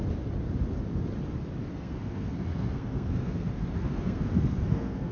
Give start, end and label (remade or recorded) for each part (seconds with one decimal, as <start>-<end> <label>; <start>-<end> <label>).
0.0-1.7 recorded; 1.7-5.1 remade